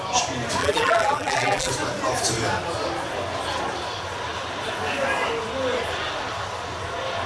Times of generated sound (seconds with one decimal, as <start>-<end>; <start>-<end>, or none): 0.6-1.7